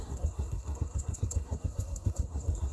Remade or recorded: remade